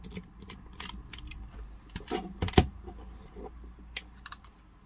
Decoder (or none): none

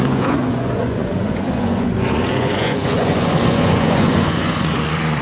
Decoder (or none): vocoder, Vocos